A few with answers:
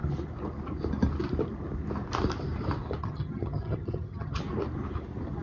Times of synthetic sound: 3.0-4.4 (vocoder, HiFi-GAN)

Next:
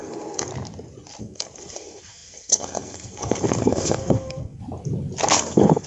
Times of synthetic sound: 0.0-0.5 (codec, SNAC); 1.2-4.6; 5.3-5.9

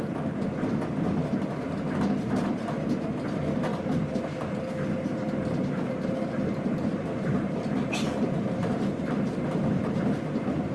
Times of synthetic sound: 3.7-4.6 (vocoder, BigVGAN v2); 5.6-9.2

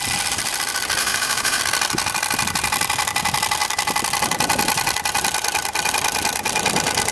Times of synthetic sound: 1.0-1.6 (autoencoder, DAC-VAE)

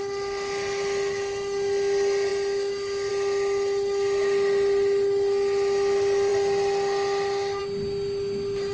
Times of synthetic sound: none

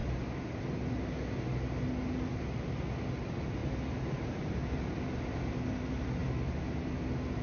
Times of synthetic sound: 3.6-4.5 (vocoder, BigVGAN v2)

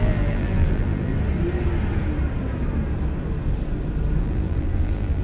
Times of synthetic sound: 0.0-1.1 (vocoder, BigVGAN v2); 4.2-5.2